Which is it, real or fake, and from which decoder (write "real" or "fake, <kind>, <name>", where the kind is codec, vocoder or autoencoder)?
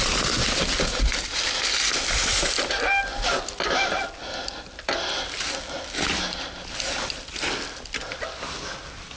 real